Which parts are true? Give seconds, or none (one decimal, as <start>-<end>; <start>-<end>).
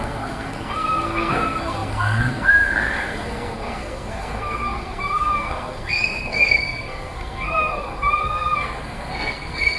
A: none